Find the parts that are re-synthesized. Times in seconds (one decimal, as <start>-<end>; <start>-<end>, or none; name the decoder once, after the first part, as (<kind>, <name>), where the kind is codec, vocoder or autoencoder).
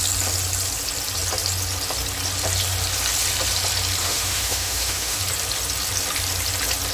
4.0-5.2 (autoencoder, DAC-VAE)